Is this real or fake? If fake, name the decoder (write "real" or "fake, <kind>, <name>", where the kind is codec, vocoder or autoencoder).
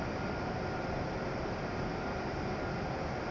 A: real